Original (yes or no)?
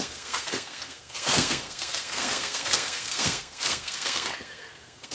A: no